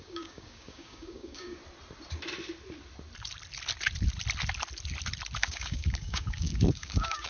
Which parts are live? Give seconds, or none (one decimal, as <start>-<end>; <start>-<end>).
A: 1.6-5.4